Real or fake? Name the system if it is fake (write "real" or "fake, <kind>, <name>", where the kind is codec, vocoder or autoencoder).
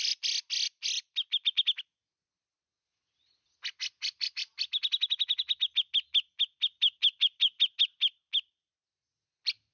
real